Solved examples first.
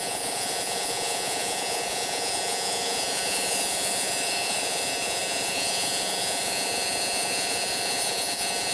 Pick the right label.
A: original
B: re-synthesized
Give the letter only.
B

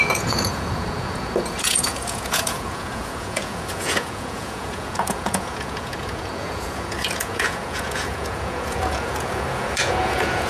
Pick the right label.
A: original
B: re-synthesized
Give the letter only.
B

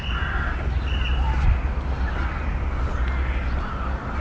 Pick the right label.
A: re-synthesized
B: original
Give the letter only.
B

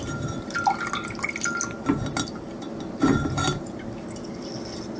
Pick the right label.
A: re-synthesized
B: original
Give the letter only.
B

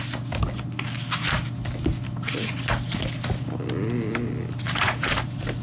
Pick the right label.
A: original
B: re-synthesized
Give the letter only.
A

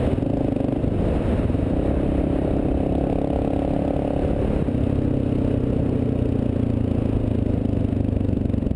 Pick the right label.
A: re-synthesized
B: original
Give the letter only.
B